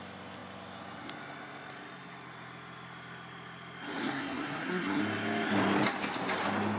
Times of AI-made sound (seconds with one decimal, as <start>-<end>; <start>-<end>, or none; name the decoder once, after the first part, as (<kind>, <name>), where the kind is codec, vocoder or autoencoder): 4.0-5.0 (codec, SNAC)